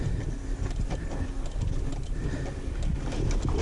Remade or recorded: recorded